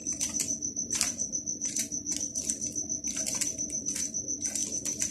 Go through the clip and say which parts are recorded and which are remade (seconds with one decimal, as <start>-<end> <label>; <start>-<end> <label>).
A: 0.0-2.4 remade; 2.4-5.1 recorded